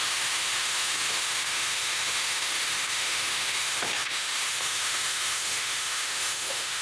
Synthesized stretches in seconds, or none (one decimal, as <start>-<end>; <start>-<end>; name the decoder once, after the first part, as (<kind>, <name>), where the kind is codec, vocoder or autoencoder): 0.0-6.8 (autoencoder, DAC-VAE)